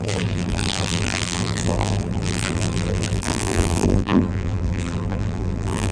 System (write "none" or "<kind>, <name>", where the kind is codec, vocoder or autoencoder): vocoder, BigVGAN v2